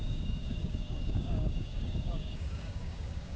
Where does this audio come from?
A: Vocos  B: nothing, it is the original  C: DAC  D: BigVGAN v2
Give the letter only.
C